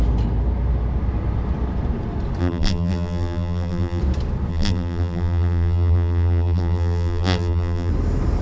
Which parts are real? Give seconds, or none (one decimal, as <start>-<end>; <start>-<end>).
0.0-2.4; 4.0-4.5; 7.9-8.4